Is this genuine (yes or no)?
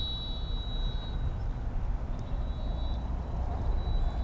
yes